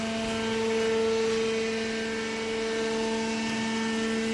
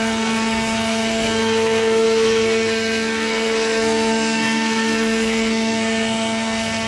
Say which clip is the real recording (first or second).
first